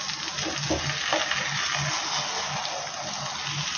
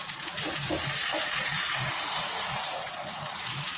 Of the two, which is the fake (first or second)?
second